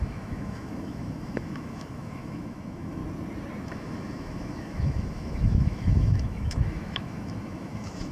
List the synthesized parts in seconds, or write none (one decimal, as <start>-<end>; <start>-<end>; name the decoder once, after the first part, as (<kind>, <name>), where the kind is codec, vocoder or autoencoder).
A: 0.0-3.0 (autoencoder, DAC-VAE); 3.6-8.1

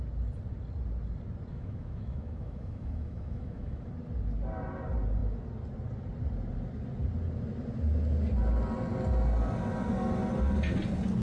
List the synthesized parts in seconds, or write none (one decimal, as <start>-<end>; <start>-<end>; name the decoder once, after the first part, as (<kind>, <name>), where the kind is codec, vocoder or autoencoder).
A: 1.5-3.9 (autoencoder, DAC-VAE)